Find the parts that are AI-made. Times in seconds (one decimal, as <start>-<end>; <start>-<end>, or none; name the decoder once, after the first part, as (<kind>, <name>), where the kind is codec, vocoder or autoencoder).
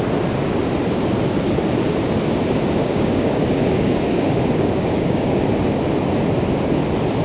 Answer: 2.8-5.4 (codec, DAC)